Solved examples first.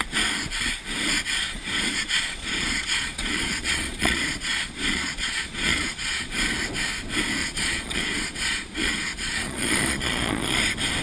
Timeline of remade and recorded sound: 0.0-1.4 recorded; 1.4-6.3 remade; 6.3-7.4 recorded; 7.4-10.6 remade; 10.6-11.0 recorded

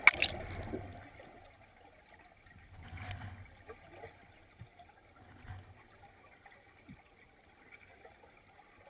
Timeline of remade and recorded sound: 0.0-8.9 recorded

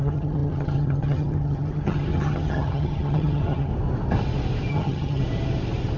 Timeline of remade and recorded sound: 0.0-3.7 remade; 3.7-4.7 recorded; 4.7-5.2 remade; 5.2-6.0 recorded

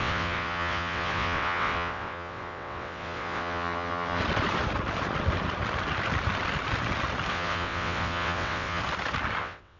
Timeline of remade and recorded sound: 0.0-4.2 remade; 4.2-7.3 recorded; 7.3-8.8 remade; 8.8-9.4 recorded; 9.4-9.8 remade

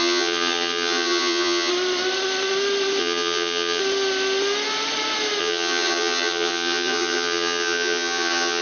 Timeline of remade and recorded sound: 0.0-1.7 remade; 1.7-3.0 recorded; 3.0-3.8 remade; 3.8-5.4 recorded; 5.4-8.6 remade

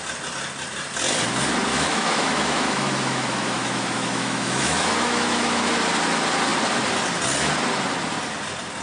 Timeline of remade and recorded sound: 0.0-1.7 recorded; 1.7-5.7 remade; 5.7-8.8 recorded

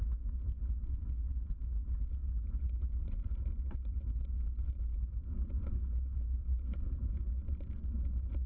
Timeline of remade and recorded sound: 0.0-4.9 recorded; 4.9-5.7 remade; 5.7-6.4 recorded; 6.4-7.2 remade; 7.2-8.5 recorded

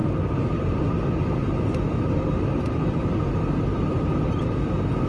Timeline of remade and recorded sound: 0.0-5.1 recorded